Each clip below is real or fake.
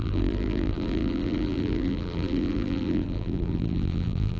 fake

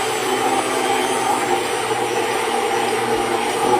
real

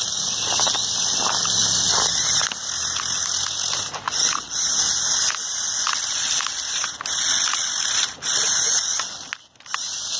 real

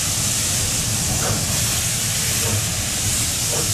real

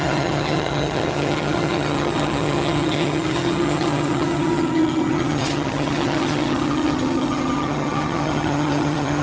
fake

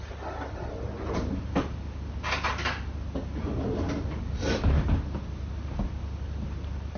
real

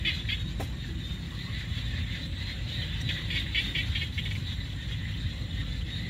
real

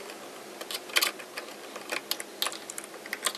real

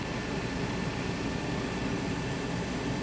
real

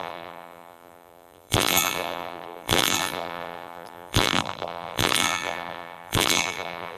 fake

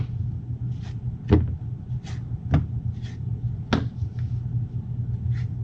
real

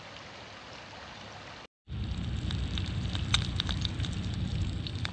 real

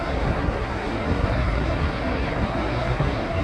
fake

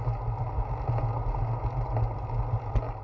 real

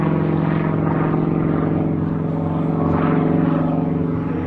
real